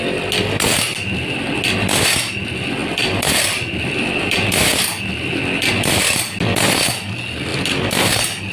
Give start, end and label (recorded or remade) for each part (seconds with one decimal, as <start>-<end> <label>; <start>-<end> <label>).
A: 0.0-2.8 recorded; 2.8-4.5 remade; 4.5-7.5 recorded; 7.5-8.5 remade